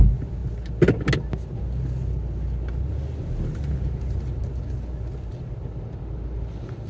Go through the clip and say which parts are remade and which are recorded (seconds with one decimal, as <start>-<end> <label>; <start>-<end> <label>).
0.0-6.9 recorded